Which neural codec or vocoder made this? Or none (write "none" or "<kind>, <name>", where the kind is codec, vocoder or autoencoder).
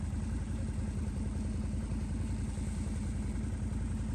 none